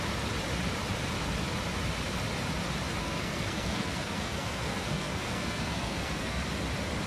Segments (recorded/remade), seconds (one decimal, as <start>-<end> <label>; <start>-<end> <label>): 0.0-3.0 recorded; 3.0-6.4 remade; 6.4-7.1 recorded